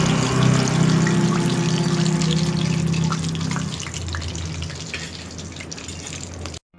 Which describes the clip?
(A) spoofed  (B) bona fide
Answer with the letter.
B